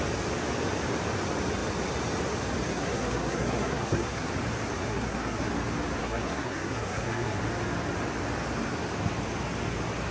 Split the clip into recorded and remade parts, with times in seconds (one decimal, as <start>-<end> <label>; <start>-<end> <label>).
0.0-2.7 recorded; 2.7-4.3 remade; 4.3-4.8 recorded; 4.8-5.5 remade; 5.5-6.0 recorded; 6.0-7.4 remade; 7.4-10.1 recorded